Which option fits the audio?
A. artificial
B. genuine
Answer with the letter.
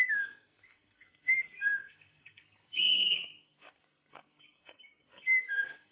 A